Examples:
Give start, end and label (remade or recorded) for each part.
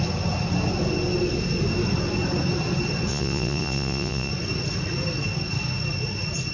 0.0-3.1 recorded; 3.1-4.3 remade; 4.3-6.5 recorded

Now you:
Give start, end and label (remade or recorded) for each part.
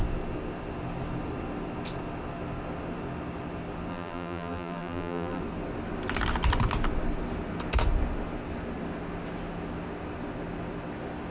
0.0-3.9 recorded; 3.9-5.4 remade; 5.4-11.3 recorded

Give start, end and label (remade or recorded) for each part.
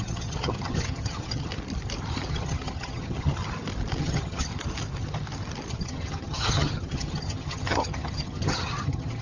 0.0-1.5 remade; 1.5-2.3 recorded; 2.3-3.4 remade; 3.4-4.0 recorded; 4.0-4.5 remade; 4.5-5.7 recorded; 5.7-9.2 remade